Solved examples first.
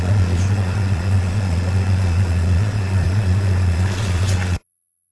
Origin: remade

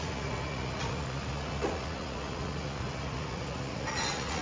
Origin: remade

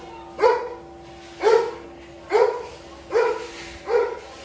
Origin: recorded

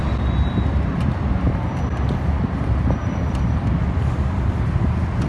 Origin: recorded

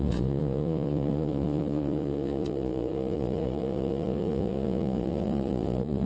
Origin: remade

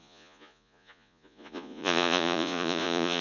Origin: remade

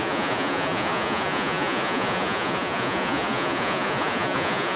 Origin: remade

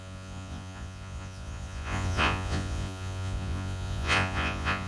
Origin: remade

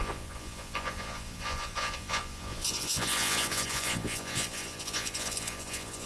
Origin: remade